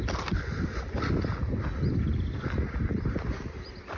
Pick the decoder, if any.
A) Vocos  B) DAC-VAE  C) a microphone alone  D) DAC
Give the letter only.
C